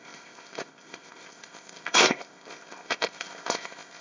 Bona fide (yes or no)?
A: no